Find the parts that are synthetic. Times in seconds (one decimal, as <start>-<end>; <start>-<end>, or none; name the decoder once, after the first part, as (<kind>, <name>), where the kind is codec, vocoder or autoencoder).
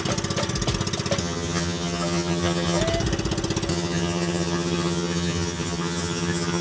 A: 1.2-2.8 (vocoder, HiFi-GAN); 3.7-6.6